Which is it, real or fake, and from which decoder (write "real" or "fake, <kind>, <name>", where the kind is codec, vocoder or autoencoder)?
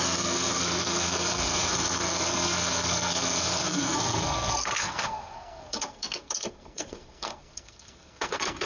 fake, codec, SNAC